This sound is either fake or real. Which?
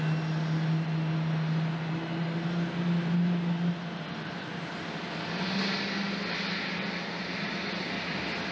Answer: real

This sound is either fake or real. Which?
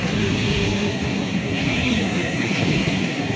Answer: fake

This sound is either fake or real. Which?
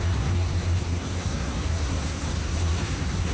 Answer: fake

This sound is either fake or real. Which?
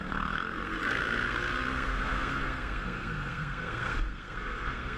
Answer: fake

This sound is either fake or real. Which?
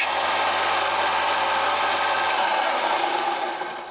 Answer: real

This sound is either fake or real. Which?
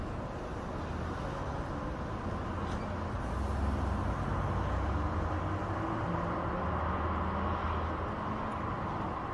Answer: real